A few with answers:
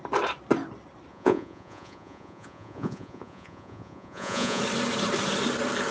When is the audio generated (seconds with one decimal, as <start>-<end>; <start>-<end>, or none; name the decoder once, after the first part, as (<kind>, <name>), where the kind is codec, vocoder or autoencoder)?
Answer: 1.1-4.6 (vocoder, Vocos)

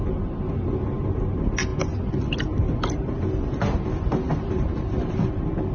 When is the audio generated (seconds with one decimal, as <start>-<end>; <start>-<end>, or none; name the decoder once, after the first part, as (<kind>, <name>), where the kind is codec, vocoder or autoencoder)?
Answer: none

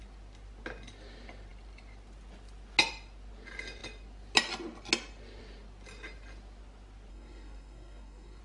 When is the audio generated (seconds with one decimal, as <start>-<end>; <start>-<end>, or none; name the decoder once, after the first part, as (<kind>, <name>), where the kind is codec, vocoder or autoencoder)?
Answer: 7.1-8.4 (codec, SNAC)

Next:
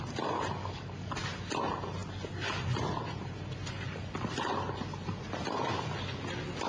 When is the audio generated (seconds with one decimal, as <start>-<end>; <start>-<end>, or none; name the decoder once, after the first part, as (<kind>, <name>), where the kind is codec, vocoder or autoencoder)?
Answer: 0.6-1.1 (codec, DAC)